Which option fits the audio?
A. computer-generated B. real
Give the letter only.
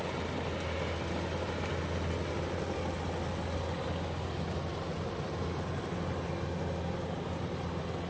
B